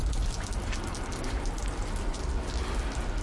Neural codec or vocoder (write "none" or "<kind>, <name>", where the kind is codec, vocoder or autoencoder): none